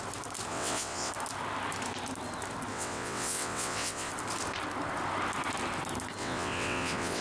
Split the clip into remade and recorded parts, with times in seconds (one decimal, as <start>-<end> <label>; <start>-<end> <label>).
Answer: 0.0-0.5 recorded; 0.5-1.1 remade; 1.1-2.7 recorded; 2.7-4.1 remade; 4.1-6.2 recorded; 6.2-7.2 remade